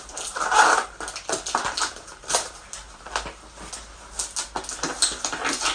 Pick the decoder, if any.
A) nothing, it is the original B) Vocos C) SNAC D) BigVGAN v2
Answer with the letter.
A